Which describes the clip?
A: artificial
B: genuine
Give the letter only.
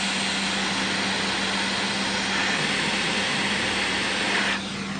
B